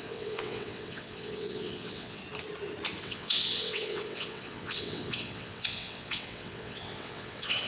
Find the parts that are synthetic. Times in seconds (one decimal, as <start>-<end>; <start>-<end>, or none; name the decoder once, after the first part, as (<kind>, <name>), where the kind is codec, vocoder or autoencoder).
0.0-2.2 (vocoder, WaveNeXt); 3.0-7.7